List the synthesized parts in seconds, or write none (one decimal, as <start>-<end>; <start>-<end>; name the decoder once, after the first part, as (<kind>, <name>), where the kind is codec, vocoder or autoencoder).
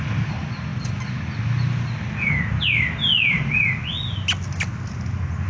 none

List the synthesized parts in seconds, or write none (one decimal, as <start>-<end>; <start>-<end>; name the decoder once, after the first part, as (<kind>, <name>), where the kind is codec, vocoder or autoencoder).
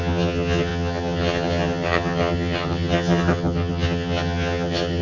0.0-5.0 (vocoder, HiFi-GAN)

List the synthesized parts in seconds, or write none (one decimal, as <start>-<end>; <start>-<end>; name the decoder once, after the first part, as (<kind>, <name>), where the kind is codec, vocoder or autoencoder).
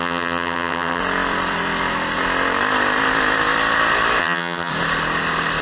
0.0-1.0 (vocoder, HiFi-GAN); 4.2-4.7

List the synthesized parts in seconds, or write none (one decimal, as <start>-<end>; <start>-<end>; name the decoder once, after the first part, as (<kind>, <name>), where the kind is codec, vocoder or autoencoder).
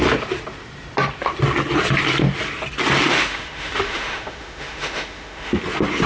3.1-5.6 (autoencoder, DAC-VAE)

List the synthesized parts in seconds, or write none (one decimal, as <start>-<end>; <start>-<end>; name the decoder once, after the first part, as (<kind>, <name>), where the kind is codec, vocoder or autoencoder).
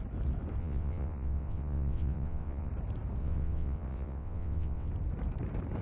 0.6-2.7 (vocoder, WaveNeXt); 3.2-4.9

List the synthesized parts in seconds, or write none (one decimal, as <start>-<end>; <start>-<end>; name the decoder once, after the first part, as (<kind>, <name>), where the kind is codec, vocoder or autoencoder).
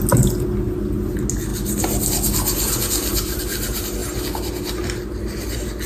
none